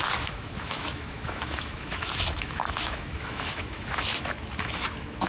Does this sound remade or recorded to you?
remade